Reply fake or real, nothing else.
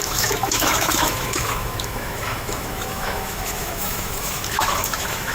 fake